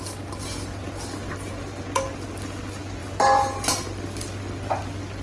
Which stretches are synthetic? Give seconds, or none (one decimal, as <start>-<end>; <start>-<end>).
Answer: none